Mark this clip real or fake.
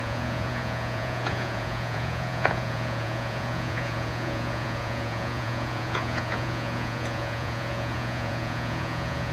fake